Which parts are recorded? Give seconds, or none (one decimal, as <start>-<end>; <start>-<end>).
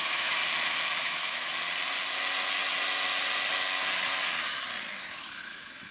0.4-1.0; 1.5-5.0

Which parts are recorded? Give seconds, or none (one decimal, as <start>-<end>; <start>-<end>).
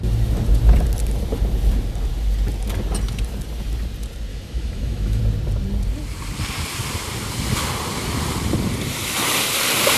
0.0-4.3; 5.2-10.0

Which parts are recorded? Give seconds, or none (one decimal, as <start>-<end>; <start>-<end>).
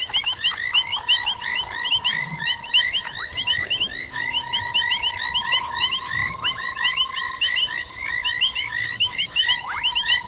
none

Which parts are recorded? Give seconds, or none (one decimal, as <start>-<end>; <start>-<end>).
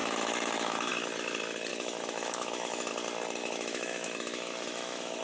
0.9-1.7; 2.9-3.4